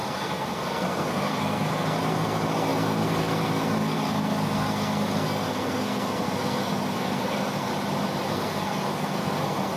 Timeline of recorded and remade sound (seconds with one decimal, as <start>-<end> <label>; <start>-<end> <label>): 0.0-7.7 remade; 7.7-8.3 recorded; 8.3-9.8 remade